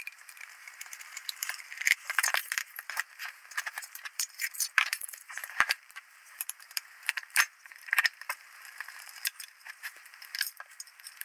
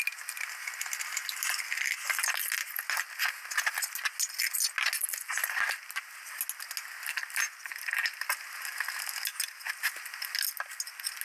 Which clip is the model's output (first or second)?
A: first